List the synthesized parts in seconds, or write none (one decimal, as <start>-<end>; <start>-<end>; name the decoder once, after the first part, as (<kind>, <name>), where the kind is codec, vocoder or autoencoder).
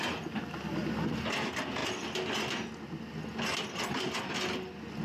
none